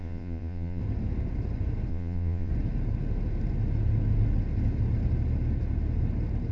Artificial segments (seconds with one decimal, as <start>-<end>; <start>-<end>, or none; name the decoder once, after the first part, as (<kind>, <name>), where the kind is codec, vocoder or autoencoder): 0.0-0.8 (vocoder, Vocos); 1.9-2.5